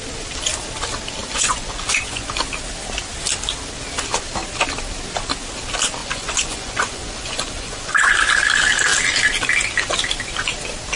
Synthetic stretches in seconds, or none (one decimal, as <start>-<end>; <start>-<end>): 1.2-2.3; 6.0-8.1